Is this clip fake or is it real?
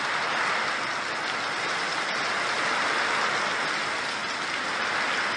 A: real